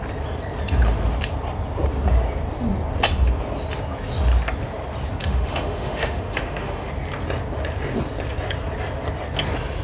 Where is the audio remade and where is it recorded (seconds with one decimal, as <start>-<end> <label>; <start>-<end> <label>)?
0.0-5.2 recorded; 5.2-6.9 remade; 6.9-9.8 recorded